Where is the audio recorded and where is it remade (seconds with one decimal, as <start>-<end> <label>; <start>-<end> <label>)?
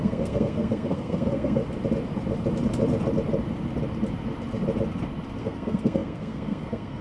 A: 0.0-1.6 remade; 1.6-5.4 recorded; 5.4-7.0 remade